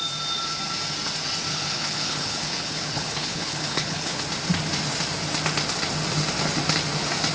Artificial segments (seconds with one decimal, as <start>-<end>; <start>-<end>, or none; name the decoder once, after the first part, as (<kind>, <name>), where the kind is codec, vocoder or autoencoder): 1.5-4.2 (codec, HILCodec)